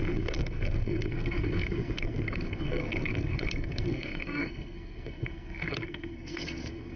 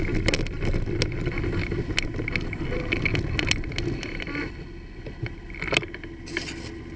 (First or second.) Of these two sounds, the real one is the second